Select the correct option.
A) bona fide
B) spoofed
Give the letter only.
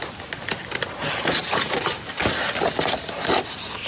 A